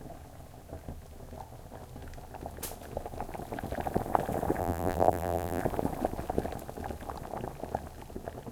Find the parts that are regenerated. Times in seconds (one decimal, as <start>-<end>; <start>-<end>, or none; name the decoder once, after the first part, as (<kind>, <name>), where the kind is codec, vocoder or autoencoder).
4.6-5.6 (vocoder, BigVGAN v2)